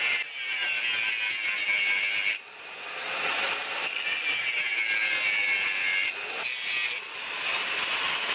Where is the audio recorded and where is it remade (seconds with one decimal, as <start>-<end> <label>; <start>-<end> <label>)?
0.0-8.3 recorded